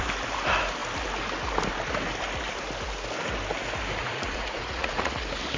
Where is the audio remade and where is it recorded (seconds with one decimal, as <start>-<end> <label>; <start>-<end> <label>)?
0.0-4.0 recorded; 4.0-5.1 remade; 5.1-5.6 recorded